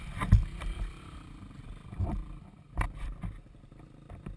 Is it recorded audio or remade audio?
remade